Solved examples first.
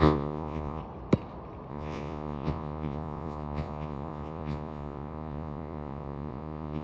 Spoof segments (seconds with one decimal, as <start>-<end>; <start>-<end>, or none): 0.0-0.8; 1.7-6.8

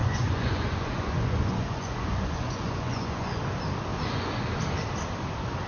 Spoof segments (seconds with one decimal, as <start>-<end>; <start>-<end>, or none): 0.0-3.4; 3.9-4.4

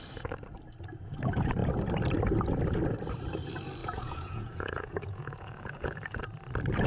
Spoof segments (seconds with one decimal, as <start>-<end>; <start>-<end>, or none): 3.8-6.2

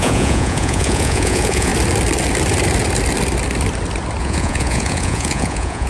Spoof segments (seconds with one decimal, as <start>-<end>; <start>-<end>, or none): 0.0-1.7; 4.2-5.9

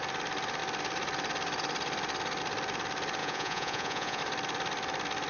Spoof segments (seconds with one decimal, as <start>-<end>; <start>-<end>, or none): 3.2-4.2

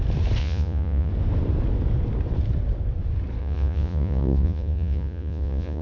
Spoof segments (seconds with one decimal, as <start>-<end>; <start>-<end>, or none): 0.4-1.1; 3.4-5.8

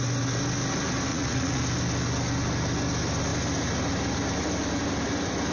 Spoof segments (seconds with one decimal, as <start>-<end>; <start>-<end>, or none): 1.1-1.6

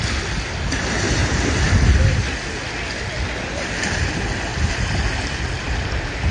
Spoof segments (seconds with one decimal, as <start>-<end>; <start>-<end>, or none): none